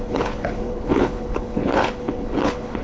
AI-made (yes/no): yes